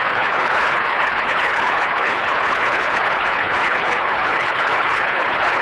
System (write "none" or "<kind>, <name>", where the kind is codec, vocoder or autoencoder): codec, HILCodec